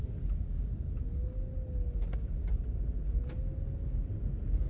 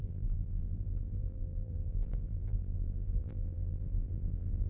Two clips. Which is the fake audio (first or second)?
second